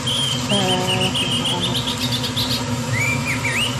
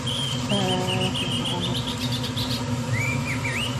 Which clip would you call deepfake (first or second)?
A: second